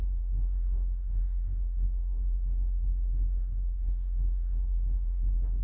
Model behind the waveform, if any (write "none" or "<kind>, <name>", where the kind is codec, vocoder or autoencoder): codec, SNAC